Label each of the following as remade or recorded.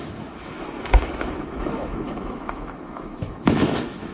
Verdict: remade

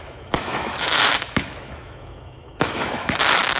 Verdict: remade